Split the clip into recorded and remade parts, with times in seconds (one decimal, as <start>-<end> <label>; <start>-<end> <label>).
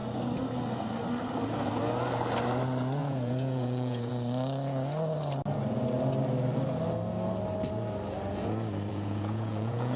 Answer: 0.0-3.0 recorded; 3.0-4.1 remade; 4.1-8.9 recorded; 8.9-10.0 remade